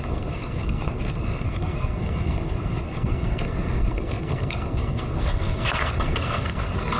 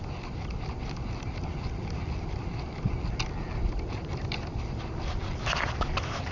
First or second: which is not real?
first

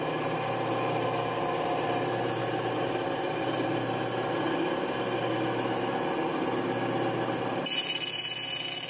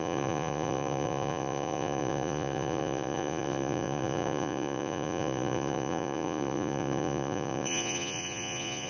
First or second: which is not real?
second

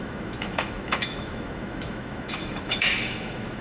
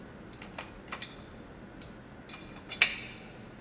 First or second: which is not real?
first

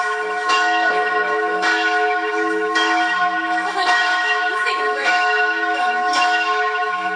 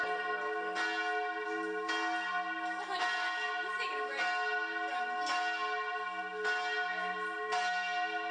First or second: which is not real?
first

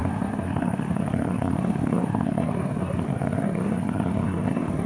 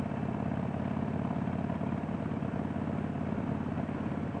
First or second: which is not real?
first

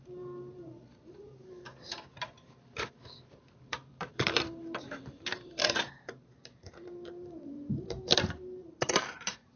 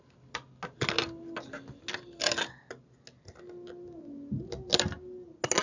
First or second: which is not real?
first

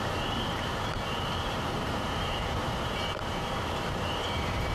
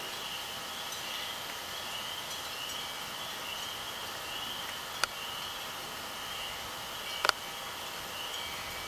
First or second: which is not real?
first